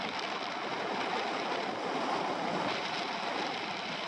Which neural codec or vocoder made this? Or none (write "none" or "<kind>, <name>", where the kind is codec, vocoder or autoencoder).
none